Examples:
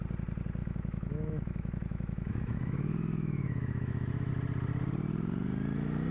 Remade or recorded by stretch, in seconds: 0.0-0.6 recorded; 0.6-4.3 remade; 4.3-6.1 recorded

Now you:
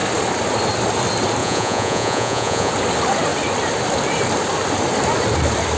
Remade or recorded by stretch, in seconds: 0.0-1.4 recorded; 1.4-2.7 remade; 2.7-5.8 recorded

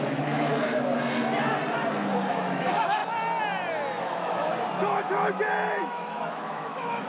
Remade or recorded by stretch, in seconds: 0.0-0.5 remade; 0.5-2.3 recorded; 2.3-3.0 remade; 3.0-4.0 recorded; 4.0-4.5 remade; 4.5-5.8 recorded; 5.8-7.1 remade

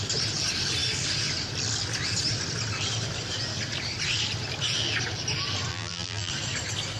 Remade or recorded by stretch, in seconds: 0.0-5.7 recorded; 5.7-6.3 remade; 6.3-7.0 recorded